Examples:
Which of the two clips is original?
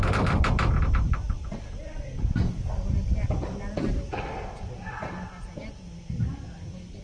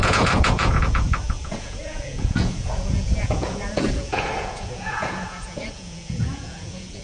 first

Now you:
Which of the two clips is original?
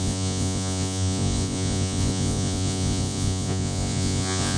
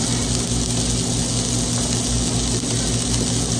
second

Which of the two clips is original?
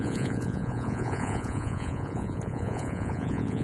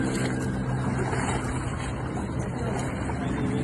second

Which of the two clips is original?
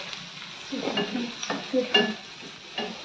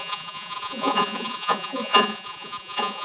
first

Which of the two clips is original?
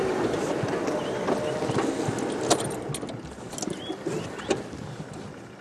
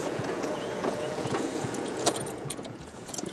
first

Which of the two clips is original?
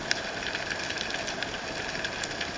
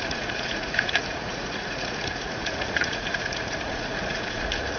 first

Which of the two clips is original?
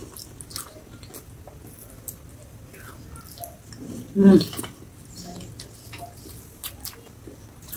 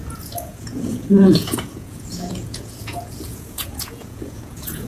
first